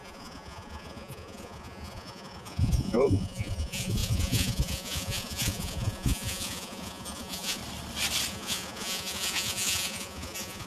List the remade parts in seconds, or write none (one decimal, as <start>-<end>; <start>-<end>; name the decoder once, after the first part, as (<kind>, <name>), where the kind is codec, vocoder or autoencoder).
0.0-7.6 (vocoder, Vocos); 8.3-10.7